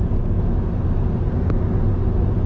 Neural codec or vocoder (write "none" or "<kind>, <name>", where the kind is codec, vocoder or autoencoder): none